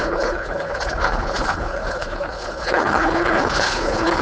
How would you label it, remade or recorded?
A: remade